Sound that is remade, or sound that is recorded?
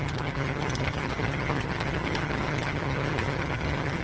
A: remade